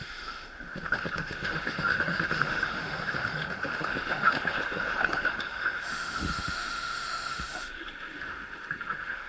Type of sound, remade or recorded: remade